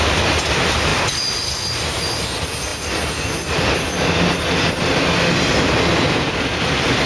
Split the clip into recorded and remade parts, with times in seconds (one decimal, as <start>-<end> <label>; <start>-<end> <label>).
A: 0.0-0.9 recorded; 0.9-1.8 remade; 1.8-7.1 recorded